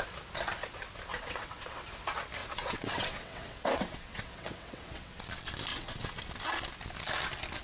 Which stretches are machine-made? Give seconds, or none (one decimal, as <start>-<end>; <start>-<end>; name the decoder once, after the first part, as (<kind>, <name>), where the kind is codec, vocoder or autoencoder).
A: 1.1-1.8 (vocoder, WaveNeXt); 2.4-5.2; 5.7-6.2